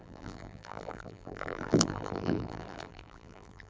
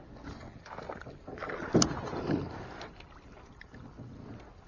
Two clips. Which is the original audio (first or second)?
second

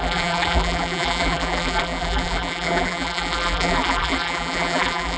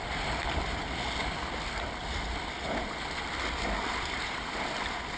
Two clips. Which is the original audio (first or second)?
second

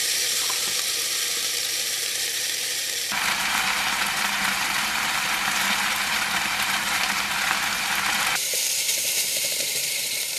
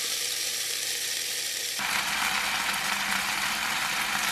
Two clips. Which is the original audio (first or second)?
second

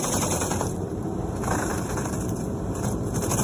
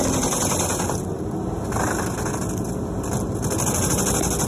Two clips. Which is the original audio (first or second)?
second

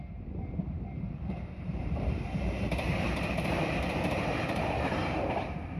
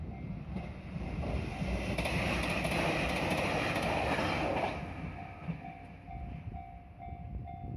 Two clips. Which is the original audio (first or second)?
second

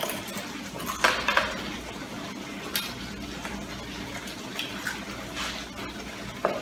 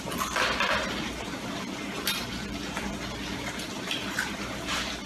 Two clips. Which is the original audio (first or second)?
first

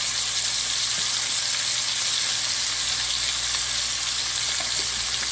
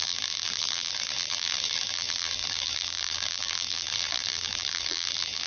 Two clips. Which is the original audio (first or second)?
first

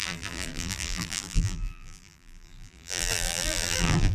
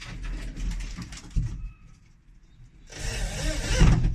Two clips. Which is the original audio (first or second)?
second